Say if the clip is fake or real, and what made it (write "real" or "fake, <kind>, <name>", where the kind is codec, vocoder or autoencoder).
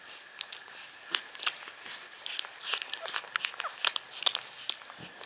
real